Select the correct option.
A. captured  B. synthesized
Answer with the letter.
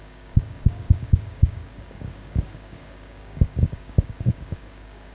B